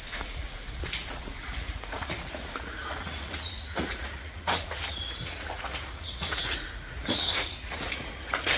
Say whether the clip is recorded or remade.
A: remade